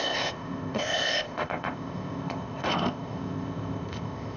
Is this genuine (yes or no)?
no